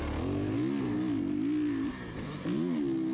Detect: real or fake real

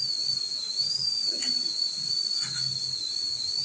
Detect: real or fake real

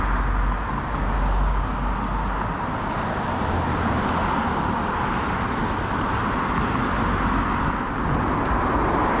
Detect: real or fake real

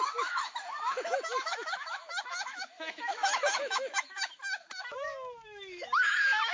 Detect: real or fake fake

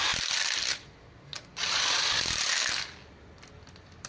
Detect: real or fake real